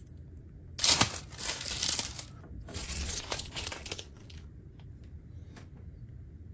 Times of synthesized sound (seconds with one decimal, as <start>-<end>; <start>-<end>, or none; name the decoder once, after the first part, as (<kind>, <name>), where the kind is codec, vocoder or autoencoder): 2.7-4.5 (vocoder, Vocos)